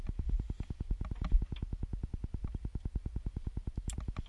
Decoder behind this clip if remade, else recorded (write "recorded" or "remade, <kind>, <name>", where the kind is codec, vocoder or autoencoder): recorded